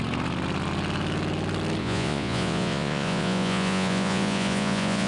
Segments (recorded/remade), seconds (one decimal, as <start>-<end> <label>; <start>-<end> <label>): 0.0-1.8 recorded; 1.8-5.1 remade